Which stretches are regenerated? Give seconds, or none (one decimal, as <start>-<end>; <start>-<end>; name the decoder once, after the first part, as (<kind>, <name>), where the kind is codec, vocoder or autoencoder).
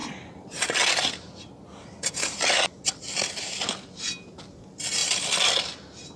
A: none